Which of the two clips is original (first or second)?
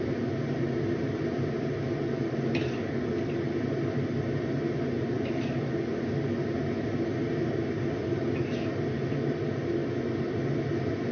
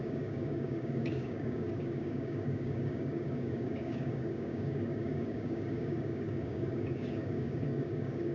first